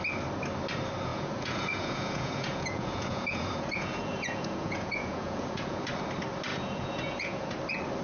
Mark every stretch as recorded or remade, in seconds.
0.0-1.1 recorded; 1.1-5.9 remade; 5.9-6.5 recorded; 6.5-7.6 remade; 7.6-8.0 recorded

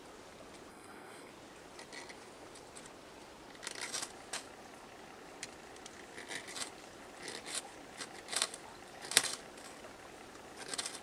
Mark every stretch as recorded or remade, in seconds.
0.0-0.7 recorded; 0.7-1.3 remade; 1.3-11.0 recorded

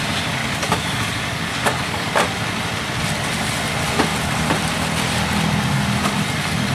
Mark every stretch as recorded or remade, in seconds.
0.0-0.4 recorded; 0.4-2.1 remade; 2.1-6.7 recorded